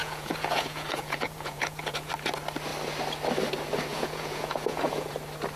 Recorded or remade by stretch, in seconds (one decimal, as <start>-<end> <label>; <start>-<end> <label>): 0.0-2.1 remade; 2.1-3.9 recorded; 3.9-5.1 remade; 5.1-5.6 recorded